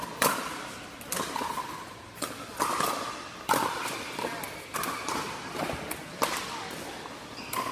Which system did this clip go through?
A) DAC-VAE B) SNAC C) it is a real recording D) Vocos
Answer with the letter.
C